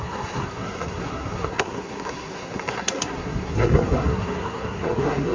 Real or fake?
fake